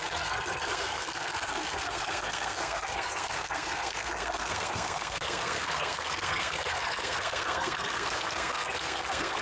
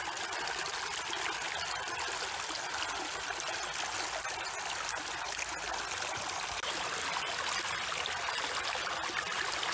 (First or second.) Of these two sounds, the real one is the second